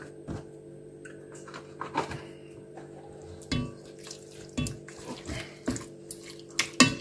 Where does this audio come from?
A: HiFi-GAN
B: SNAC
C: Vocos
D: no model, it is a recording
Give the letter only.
D